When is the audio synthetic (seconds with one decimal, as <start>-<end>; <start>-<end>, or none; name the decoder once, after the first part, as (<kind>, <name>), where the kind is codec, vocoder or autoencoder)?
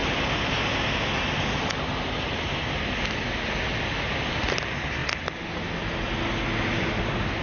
none